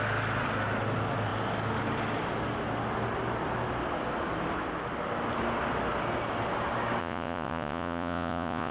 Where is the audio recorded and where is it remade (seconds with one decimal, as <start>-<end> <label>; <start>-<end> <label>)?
0.0-7.0 recorded; 7.0-8.7 remade